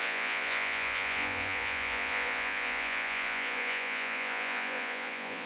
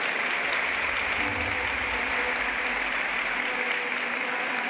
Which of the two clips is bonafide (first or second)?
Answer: second